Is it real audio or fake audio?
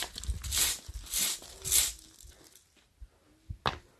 real